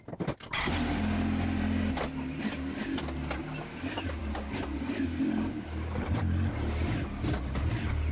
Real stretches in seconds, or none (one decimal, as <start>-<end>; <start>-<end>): 0.0-8.1